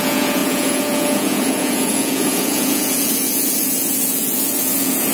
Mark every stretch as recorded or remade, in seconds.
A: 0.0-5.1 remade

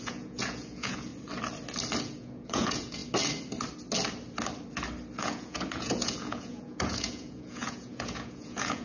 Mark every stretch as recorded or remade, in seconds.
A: 0.0-1.1 remade; 1.1-2.0 recorded; 2.0-3.0 remade; 3.0-5.2 recorded; 5.2-8.8 remade